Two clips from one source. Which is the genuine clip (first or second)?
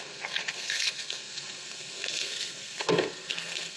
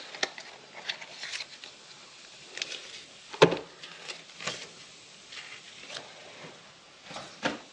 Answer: second